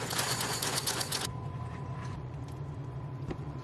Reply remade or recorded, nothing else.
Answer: remade